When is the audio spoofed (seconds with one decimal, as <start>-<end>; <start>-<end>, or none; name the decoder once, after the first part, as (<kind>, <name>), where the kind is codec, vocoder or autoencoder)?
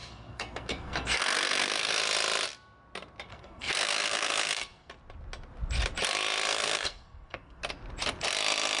0.0-2.0 (codec, SNAC); 3.3-4.9; 6.5-7.6